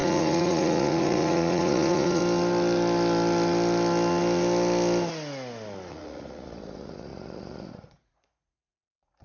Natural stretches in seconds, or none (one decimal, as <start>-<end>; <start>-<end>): 2.2-5.9